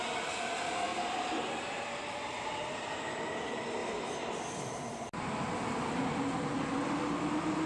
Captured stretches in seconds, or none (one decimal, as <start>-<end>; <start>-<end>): 0.0-7.7